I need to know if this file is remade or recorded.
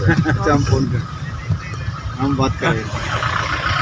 recorded